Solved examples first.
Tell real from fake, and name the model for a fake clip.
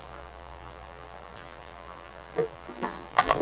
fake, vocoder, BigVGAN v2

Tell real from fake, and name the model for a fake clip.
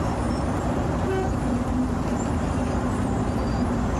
fake, vocoder, BigVGAN v2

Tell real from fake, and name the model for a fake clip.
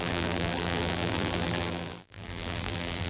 fake, vocoder, BigVGAN v2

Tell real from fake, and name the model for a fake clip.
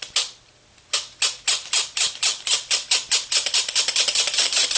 real